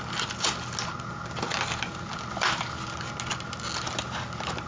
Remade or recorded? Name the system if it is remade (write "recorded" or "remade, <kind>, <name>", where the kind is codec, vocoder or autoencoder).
recorded